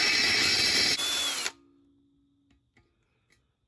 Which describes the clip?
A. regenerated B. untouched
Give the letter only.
B